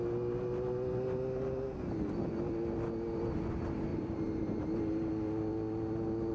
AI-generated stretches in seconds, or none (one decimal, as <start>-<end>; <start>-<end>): 3.9-5.1